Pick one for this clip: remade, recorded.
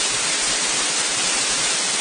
recorded